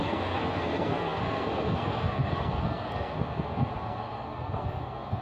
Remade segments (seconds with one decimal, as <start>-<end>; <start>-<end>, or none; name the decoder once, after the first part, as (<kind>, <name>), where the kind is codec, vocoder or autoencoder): 0.0-5.2 (codec, SNAC)